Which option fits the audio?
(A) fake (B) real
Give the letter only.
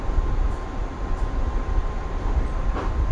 B